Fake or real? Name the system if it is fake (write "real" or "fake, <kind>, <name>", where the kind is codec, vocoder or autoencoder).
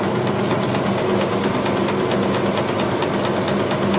real